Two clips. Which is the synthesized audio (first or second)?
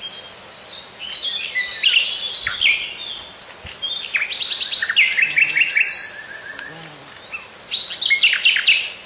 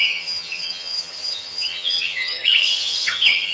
second